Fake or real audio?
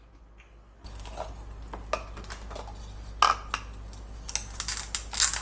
real